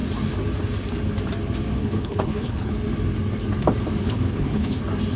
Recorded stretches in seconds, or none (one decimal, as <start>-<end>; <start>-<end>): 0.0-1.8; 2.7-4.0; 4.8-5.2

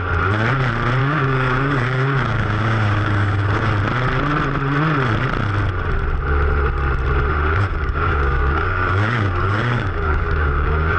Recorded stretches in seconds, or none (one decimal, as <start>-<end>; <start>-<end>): 0.0-1.0; 3.7-7.5

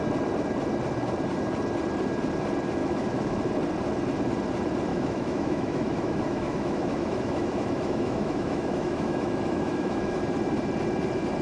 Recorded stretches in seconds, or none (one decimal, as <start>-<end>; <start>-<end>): 0.0-2.8; 3.4-4.9; 10.2-11.4

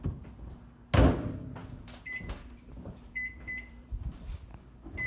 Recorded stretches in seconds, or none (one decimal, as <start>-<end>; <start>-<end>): 0.0-1.6; 4.3-5.1